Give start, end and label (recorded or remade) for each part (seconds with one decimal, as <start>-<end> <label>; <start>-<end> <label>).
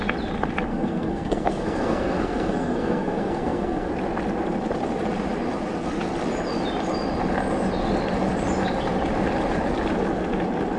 0.0-0.7 recorded; 0.7-3.9 remade; 3.9-10.8 recorded